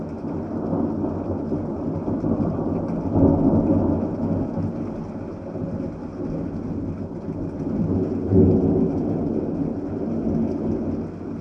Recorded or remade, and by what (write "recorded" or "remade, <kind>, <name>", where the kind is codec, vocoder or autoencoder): recorded